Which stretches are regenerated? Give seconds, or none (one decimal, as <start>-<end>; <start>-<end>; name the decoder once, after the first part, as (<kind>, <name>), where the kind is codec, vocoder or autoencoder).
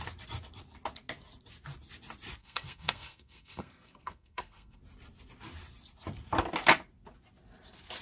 2.4-4.8 (codec, SNAC)